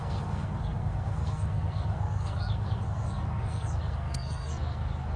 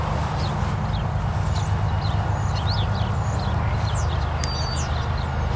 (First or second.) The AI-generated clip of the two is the first